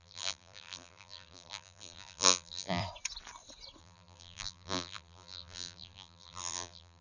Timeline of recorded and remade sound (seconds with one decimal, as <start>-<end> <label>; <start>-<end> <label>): 0.0-2.8 remade; 2.8-3.8 recorded; 3.8-7.0 remade